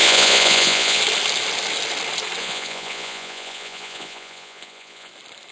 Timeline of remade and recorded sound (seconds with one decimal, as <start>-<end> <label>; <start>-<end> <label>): 0.0-1.0 remade; 1.0-2.4 recorded; 2.4-5.1 remade; 5.1-5.5 recorded